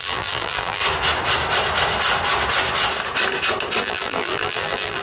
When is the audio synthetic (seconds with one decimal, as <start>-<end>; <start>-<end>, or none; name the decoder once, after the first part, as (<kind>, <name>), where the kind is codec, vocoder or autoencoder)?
0.0-0.8 (vocoder, BigVGAN v2); 3.8-5.0